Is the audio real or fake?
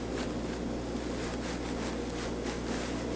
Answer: real